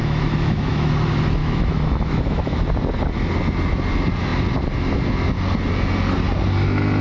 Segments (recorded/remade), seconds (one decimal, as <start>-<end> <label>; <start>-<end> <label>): 0.0-0.9 remade; 0.9-1.4 recorded; 1.4-2.6 remade; 2.6-7.0 recorded